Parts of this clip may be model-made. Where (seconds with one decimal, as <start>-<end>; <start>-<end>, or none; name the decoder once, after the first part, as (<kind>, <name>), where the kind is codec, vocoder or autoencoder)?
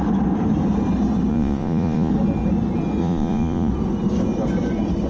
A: 1.3-2.1 (vocoder, Vocos); 3.0-3.7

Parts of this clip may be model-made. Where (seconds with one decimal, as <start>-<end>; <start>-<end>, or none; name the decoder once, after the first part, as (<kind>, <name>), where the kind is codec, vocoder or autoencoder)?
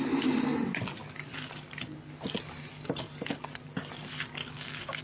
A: 4.4-5.0 (codec, DAC)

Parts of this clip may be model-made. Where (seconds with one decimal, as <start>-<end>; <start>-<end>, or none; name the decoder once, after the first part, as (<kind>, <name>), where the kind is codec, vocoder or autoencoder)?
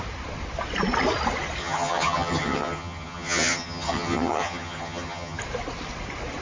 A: 1.6-5.4 (vocoder, HiFi-GAN)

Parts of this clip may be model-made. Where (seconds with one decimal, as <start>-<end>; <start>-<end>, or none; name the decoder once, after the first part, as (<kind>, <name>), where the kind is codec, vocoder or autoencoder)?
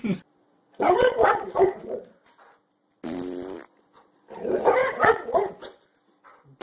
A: 0.4-1.8 (vocoder, WaveNeXt); 4.8-5.5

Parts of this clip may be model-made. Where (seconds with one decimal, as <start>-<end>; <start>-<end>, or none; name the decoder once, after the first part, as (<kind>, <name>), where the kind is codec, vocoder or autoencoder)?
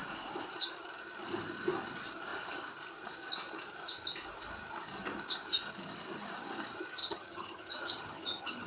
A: 7.0-8.7 (vocoder, HiFi-GAN)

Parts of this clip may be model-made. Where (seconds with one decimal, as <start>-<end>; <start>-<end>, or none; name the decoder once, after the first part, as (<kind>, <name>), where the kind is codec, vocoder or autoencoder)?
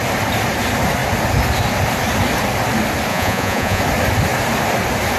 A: 3.1-3.8 (vocoder, Vocos)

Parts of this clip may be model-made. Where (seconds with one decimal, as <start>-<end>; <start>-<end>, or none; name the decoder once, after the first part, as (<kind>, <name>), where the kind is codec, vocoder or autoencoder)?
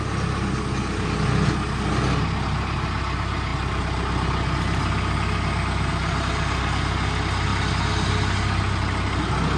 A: none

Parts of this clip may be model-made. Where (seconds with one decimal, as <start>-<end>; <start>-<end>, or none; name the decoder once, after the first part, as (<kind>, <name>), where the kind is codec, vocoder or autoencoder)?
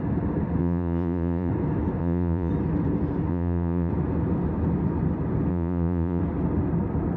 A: 0.6-1.5 (vocoder, Vocos); 2.0-2.5; 3.3-3.9; 5.5-6.2